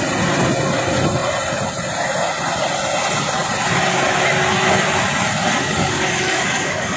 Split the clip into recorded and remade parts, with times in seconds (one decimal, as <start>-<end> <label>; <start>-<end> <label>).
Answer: 0.0-5.6 recorded; 5.6-7.0 remade